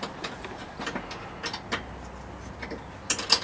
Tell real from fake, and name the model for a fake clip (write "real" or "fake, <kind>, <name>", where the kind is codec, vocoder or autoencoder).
real